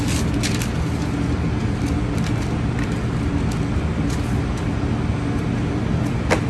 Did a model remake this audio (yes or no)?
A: no